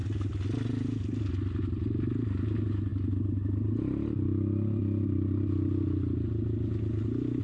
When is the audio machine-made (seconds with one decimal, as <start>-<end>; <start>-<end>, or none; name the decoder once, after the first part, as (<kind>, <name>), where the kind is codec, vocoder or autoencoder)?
none